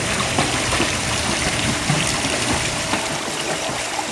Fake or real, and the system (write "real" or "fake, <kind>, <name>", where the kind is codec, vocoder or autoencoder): fake, vocoder, BigVGAN v2